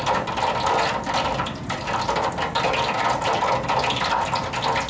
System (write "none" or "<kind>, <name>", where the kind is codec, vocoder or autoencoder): none